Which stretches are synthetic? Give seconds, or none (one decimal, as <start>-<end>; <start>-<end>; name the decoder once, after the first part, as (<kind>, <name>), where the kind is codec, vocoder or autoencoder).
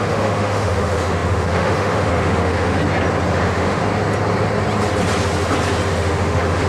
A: 0.0-2.8 (autoencoder, DAC-VAE); 3.3-3.8; 5.9-6.7